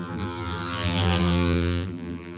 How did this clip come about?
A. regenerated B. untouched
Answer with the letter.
A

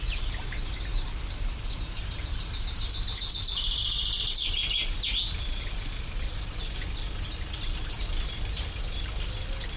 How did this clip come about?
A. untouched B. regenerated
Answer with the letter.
A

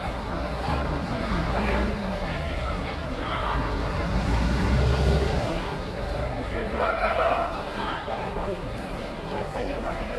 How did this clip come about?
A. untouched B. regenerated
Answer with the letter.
B